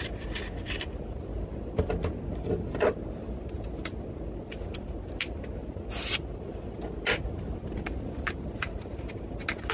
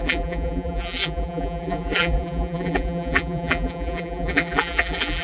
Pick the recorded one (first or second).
first